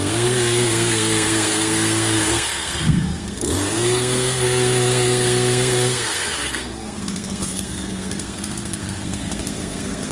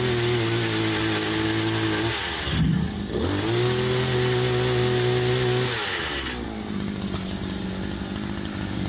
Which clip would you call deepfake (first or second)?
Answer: first